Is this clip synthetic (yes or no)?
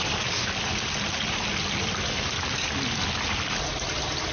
no